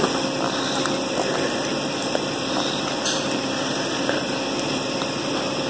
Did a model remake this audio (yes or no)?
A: yes